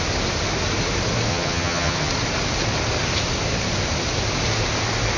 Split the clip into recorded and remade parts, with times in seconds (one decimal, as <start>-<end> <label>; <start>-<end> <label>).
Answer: 0.0-1.3 recorded; 1.3-2.1 remade; 2.1-5.2 recorded